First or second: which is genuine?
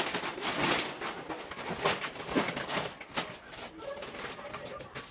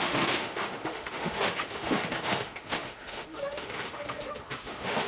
first